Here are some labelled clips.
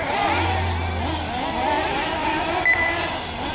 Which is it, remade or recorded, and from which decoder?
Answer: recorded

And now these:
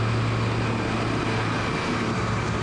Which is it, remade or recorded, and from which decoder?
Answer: recorded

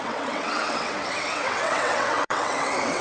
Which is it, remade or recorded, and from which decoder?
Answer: remade, vocoder, WaveNeXt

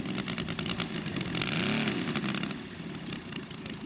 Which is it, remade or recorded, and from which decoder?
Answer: recorded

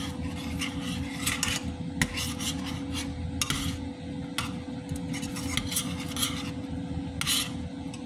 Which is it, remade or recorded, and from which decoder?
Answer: recorded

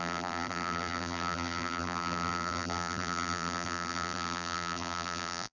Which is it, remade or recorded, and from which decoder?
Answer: remade, vocoder, BigVGAN v2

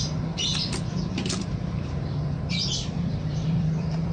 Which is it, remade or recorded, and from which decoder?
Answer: remade, vocoder, BigVGAN v2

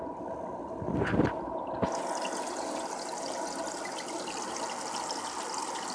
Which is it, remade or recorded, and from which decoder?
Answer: recorded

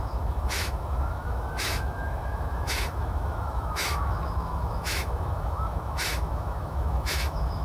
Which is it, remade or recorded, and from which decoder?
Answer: remade, autoencoder, DAC-VAE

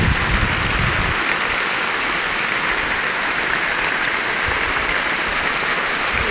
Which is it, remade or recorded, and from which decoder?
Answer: recorded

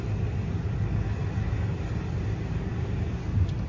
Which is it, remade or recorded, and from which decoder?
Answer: recorded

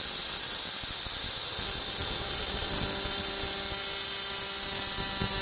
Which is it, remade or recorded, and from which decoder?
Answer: recorded